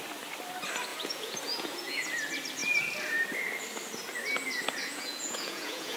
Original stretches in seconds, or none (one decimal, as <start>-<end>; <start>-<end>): 0.0-0.9; 2.0-4.8